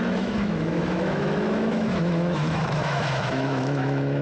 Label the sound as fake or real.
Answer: fake